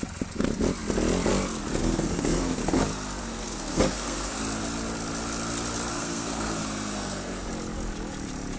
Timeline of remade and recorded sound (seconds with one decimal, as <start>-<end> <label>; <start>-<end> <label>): 0.0-1.8 recorded; 1.8-2.8 remade; 2.8-3.2 recorded; 3.2-4.4 remade; 4.4-5.9 recorded; 5.9-7.5 remade; 7.5-8.6 recorded